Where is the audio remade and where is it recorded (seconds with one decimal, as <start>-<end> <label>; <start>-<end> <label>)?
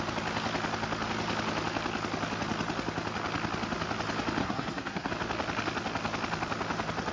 0.0-4.4 recorded; 4.4-5.1 remade; 5.1-7.1 recorded